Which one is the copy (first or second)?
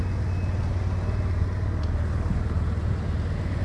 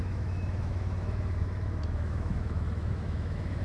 second